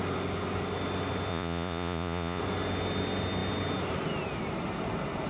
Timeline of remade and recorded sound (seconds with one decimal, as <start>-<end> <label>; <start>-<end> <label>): 0.0-1.3 recorded; 1.3-2.4 remade; 2.4-5.3 recorded

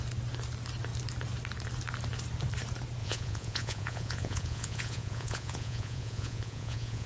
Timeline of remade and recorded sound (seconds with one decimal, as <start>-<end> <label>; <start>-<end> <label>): 0.0-3.0 recorded; 3.0-7.1 remade

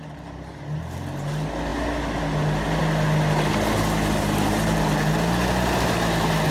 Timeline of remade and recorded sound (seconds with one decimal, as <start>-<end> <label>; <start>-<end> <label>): 0.0-6.5 recorded